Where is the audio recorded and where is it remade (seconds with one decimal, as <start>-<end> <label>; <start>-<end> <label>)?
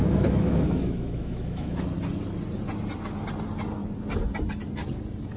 0.0-1.7 remade; 1.7-5.4 recorded